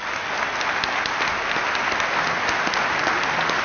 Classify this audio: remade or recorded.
recorded